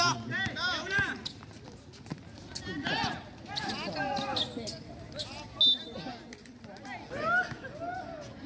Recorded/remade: recorded